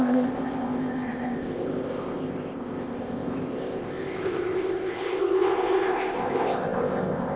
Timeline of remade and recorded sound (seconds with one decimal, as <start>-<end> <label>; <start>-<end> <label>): 0.0-7.4 remade